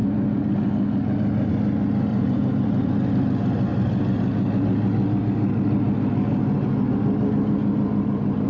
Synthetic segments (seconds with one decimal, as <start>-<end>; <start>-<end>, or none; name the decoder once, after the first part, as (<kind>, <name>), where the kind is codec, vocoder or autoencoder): 2.1-2.9 (vocoder, BigVGAN v2)